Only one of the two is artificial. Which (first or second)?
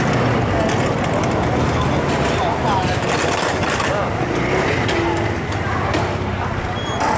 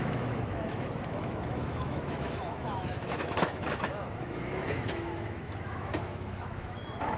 second